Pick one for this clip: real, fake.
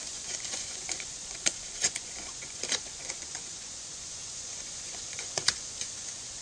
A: fake